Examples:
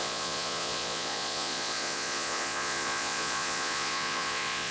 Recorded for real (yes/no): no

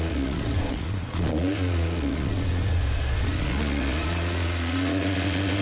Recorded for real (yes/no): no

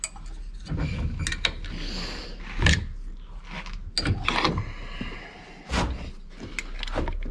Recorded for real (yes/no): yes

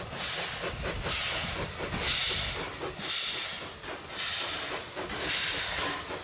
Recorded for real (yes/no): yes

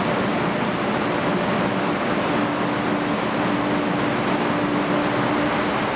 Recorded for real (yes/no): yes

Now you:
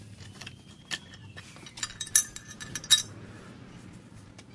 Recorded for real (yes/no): yes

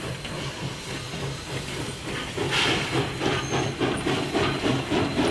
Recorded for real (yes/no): no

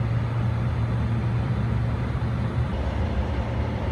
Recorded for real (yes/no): yes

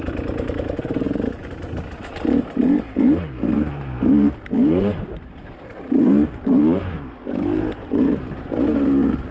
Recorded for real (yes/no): no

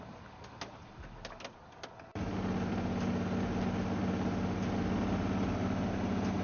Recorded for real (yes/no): yes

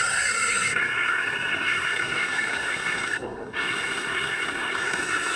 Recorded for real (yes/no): no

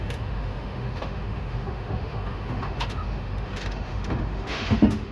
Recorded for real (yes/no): no